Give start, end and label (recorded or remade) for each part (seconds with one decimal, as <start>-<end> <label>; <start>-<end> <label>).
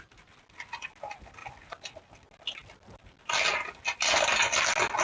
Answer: 0.0-5.0 recorded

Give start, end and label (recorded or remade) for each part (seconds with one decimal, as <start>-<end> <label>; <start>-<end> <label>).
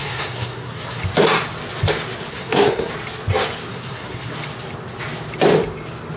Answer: 0.0-1.0 remade; 1.0-2.3 recorded; 2.3-2.9 remade; 2.9-3.7 recorded; 3.7-4.3 remade; 4.3-6.2 recorded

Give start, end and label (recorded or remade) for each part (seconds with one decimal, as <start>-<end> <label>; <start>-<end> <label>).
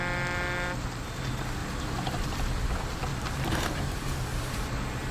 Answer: 0.0-1.6 recorded; 1.6-2.2 remade; 2.2-3.1 recorded; 3.1-4.6 remade; 4.6-5.1 recorded